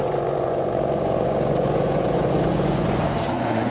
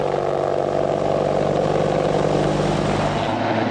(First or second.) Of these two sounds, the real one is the second